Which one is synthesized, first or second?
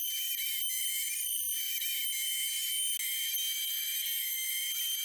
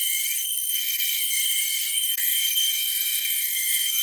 second